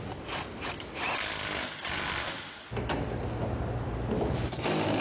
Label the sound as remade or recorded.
recorded